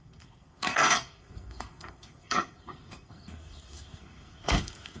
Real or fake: fake